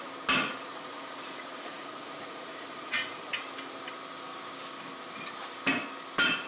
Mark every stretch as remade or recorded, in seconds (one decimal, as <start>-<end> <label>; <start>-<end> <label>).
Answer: 0.0-0.7 recorded; 0.7-3.4 remade; 3.4-6.5 recorded